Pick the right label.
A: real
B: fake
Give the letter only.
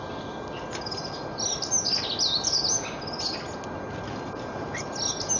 A